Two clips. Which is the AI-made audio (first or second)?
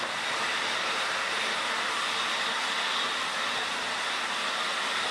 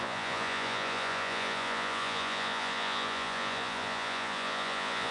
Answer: second